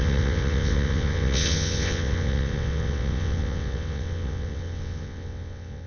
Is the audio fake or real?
fake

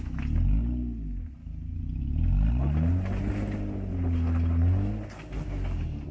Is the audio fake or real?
real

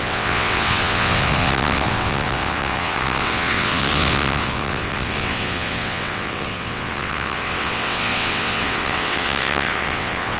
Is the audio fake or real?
fake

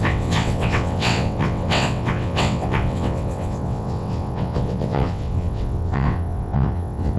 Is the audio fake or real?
fake